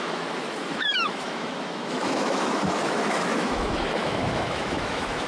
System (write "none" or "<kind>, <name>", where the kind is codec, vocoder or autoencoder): autoencoder, DAC-VAE